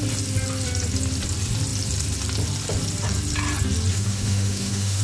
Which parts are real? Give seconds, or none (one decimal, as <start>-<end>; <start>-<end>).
0.0-3.9